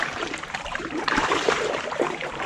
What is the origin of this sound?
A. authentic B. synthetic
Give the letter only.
B